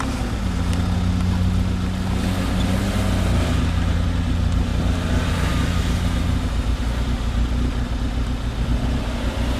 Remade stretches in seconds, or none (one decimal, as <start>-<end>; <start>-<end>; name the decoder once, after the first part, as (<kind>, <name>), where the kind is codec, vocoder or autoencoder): none